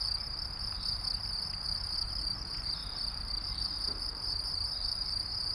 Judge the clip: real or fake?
fake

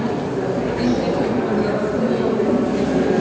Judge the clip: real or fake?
real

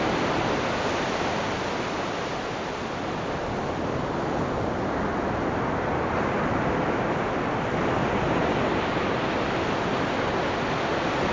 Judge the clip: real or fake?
real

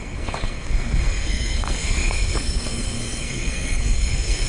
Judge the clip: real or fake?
fake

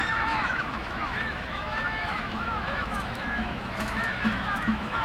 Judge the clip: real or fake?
fake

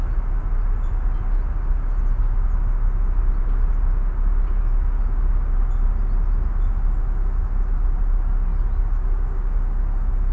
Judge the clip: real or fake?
real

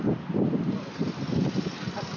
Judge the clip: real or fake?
real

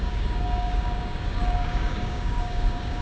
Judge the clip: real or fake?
fake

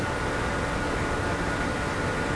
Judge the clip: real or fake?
real